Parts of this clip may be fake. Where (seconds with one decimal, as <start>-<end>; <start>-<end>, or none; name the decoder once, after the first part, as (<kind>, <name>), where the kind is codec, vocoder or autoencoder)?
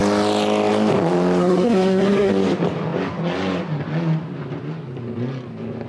1.4-2.3 (codec, SNAC)